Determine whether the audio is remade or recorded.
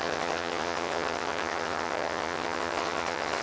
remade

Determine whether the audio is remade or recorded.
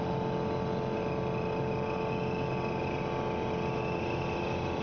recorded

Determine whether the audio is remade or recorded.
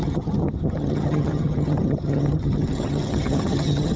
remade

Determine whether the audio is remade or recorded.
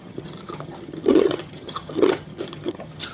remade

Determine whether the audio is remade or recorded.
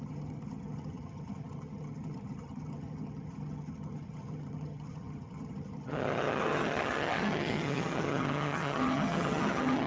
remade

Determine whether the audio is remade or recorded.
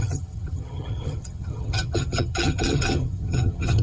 remade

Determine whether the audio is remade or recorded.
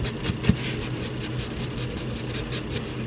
recorded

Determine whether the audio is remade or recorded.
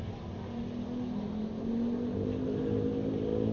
recorded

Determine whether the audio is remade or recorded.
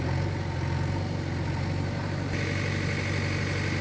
recorded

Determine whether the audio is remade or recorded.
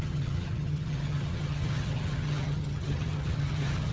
remade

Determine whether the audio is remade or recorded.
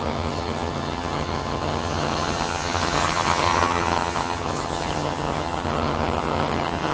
remade